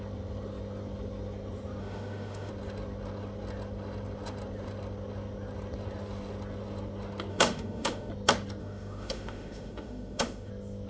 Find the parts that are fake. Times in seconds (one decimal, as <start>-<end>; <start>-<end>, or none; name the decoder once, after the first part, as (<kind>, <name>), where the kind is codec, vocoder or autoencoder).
1.8-2.5 (autoencoder, DAC-VAE); 7.3-8.1; 8.6-10.5